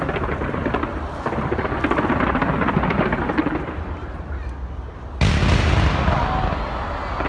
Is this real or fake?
real